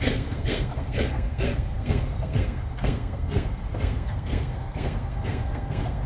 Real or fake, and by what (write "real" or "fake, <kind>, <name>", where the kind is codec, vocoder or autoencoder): fake, codec, SNAC